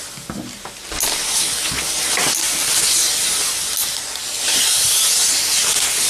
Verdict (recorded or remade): recorded